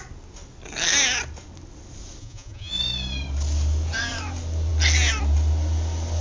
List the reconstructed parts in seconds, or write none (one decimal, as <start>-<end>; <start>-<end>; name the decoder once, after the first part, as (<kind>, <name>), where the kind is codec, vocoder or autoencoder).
2.2-2.7 (vocoder, Vocos)